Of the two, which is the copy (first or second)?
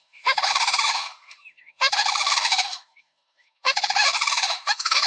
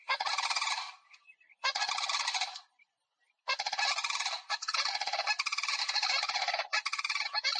first